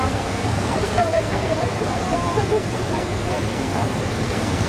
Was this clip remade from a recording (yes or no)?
yes